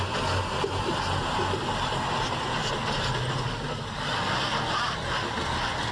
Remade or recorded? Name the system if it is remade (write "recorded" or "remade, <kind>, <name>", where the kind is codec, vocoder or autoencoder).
recorded